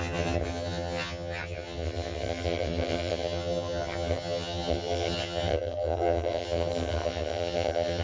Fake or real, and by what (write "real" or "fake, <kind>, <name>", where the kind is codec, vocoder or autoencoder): fake, vocoder, HiFi-GAN